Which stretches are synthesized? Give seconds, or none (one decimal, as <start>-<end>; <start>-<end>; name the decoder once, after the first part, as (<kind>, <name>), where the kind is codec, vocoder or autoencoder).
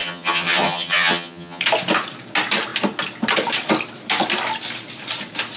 0.0-1.6 (vocoder, HiFi-GAN)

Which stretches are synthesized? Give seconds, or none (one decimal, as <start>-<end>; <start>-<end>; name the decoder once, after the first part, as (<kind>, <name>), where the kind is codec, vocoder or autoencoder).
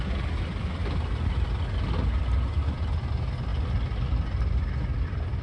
none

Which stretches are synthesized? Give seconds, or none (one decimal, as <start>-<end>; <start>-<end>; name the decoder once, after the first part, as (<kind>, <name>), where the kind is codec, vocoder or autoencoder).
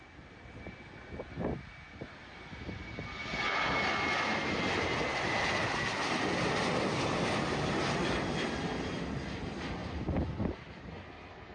9.8-10.3 (vocoder, BigVGAN v2)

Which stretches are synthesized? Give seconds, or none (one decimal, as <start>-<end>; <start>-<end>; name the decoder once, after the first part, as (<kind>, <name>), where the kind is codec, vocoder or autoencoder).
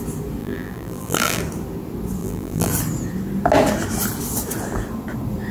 0.4-1.4 (vocoder, BigVGAN v2); 2.2-2.7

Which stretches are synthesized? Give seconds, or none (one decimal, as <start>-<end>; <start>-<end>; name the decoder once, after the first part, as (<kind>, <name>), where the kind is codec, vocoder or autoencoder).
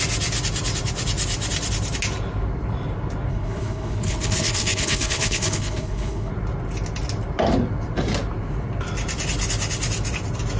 3.3-6.3 (codec, HILCodec)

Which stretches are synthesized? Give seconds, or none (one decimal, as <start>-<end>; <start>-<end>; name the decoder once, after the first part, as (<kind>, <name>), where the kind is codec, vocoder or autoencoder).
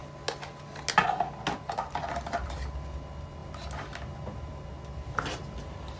none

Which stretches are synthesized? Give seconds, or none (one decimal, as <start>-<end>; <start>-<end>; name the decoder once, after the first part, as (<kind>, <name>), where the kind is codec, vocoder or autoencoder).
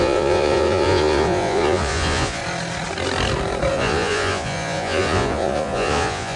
0.0-2.4 (vocoder, Vocos); 3.7-6.4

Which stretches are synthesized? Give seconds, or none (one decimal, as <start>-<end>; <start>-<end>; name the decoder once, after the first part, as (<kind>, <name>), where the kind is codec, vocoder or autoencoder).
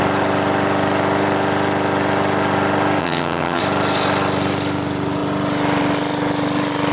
3.0-3.6 (vocoder, HiFi-GAN)